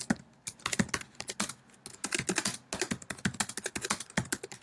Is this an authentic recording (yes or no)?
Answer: yes